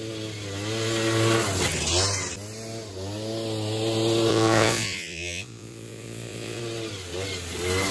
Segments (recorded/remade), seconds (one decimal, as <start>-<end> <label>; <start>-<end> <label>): 0.0-4.3 recorded; 4.3-6.6 remade; 6.6-7.9 recorded